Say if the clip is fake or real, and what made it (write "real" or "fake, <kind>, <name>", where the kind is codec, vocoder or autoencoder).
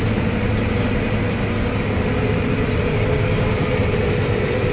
real